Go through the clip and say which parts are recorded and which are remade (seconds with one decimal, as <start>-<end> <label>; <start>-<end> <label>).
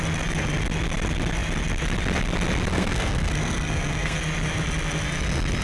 0.0-2.7 recorded; 2.7-4.2 remade; 4.2-5.6 recorded